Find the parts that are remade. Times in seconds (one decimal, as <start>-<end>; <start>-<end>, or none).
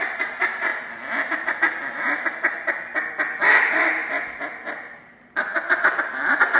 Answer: 0.0-0.7; 3.5-4.0; 4.8-6.6